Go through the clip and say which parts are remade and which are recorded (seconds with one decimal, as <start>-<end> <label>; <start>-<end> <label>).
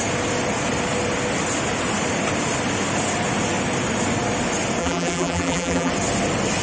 0.0-4.8 recorded; 4.8-5.9 remade; 5.9-6.6 recorded